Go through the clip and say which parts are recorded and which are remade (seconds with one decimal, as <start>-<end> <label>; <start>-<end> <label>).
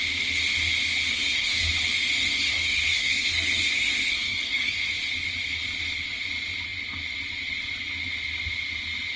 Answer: 0.0-1.1 recorded; 1.1-1.7 remade; 1.7-2.2 recorded; 2.2-4.9 remade; 4.9-9.2 recorded